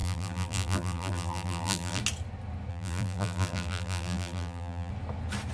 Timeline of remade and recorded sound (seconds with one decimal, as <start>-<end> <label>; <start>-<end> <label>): 0.0-2.0 remade; 2.0-2.7 recorded; 2.7-4.9 remade; 4.9-5.5 recorded

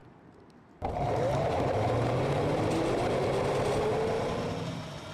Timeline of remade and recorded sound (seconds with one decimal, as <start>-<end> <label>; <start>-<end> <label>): 0.0-2.3 remade; 2.3-5.1 recorded

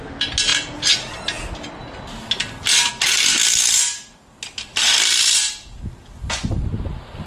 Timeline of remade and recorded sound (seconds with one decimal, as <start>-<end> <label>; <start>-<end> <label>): 0.0-4.7 recorded; 4.7-5.5 remade; 5.5-7.3 recorded